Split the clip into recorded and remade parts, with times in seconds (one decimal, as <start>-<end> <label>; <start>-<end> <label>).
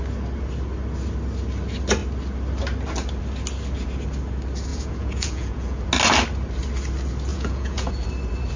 0.0-4.7 recorded; 4.7-5.9 remade; 5.9-7.3 recorded; 7.3-7.9 remade; 7.9-8.6 recorded